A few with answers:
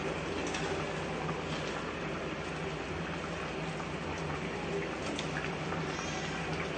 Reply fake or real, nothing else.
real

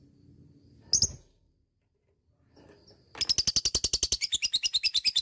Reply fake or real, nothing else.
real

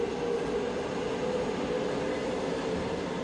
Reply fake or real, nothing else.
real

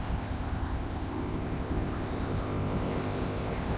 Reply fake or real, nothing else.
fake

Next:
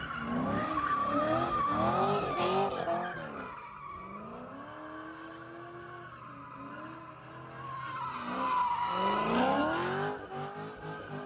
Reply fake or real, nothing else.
real